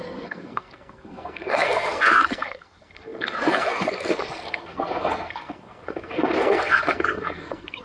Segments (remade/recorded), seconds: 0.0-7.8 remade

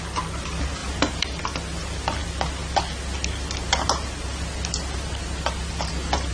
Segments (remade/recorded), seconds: 0.0-6.3 recorded

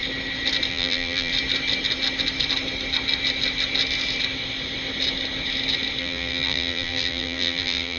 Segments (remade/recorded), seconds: 0.0-0.7 recorded; 0.7-1.3 remade; 1.3-6.0 recorded; 6.0-8.0 remade

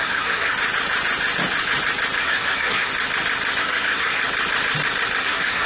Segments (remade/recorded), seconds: 0.0-0.5 remade; 0.5-2.2 recorded; 2.2-2.9 remade; 2.9-3.6 recorded; 3.6-4.2 remade; 4.2-5.2 recorded; 5.2-5.7 remade

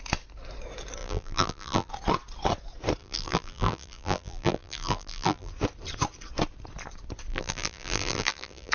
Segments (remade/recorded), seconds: 0.0-1.0 recorded; 1.0-1.9 remade; 1.9-3.0 recorded; 3.0-5.5 remade; 5.5-7.3 recorded; 7.3-8.7 remade

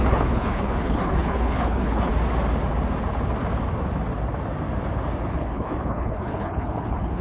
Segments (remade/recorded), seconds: 0.0-2.1 remade; 2.1-5.3 recorded; 5.3-7.2 remade

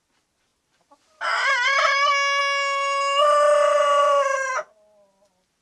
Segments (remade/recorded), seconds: 0.0-5.6 recorded